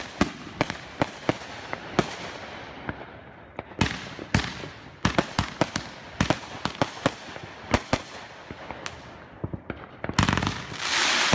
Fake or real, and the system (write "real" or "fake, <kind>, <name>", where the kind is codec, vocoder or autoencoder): real